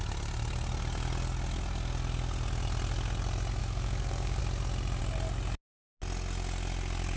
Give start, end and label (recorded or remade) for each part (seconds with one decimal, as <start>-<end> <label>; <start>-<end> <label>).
0.0-3.6 recorded; 3.6-4.4 remade; 4.4-7.2 recorded